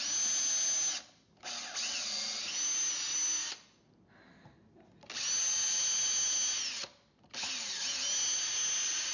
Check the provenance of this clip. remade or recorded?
recorded